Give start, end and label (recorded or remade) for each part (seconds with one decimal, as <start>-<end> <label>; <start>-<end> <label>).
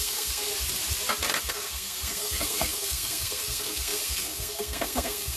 0.0-0.5 remade; 0.5-1.4 recorded; 1.4-5.4 remade